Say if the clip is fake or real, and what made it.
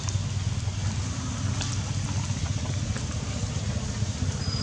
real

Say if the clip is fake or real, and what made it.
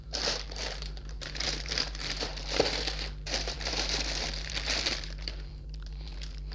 fake, vocoder, BigVGAN v2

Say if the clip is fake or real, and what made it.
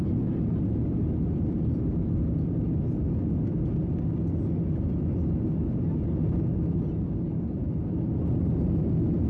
real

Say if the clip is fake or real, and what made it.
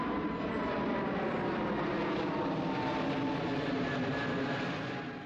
real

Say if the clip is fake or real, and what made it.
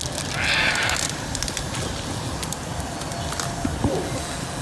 real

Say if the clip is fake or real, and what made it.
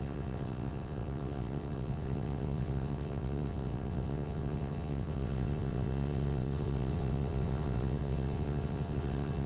fake, vocoder, WaveNeXt